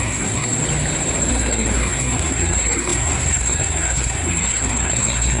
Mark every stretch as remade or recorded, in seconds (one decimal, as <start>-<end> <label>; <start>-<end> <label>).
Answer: 0.0-0.6 remade; 0.6-1.3 recorded; 1.3-5.4 remade